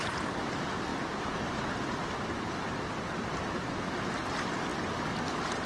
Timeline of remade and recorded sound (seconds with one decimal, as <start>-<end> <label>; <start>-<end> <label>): 0.0-5.7 recorded